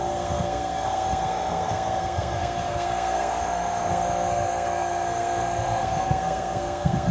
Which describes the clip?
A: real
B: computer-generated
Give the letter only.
B